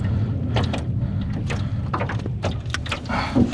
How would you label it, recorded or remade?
recorded